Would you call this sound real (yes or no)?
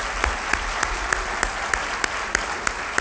yes